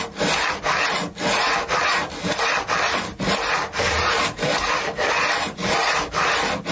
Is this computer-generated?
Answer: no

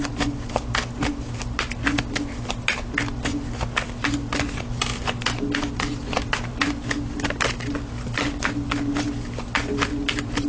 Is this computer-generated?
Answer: no